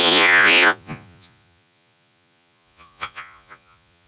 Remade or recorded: remade